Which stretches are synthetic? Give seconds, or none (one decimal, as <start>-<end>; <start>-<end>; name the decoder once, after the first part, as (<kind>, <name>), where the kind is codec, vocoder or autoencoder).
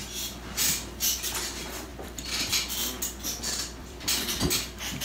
1.9-2.5 (vocoder, BigVGAN v2); 3.8-4.3